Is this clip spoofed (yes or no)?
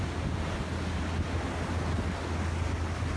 no